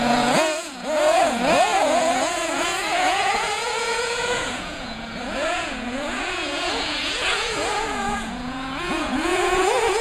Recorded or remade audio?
remade